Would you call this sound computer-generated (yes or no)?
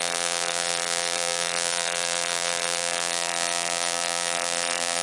yes